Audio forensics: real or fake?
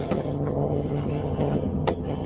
fake